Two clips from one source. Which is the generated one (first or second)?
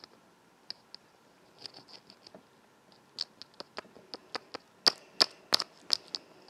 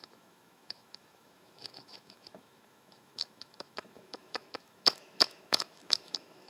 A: second